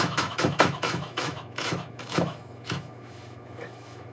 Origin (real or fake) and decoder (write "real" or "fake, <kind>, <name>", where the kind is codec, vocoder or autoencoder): fake, autoencoder, DAC-VAE